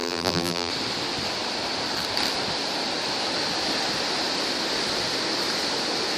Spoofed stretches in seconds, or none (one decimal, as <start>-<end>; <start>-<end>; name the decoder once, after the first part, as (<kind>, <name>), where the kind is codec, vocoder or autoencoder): 0.0-0.7 (vocoder, BigVGAN v2)